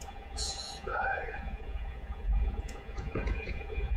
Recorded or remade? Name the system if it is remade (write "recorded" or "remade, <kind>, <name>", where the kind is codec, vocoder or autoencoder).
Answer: remade, vocoder, Vocos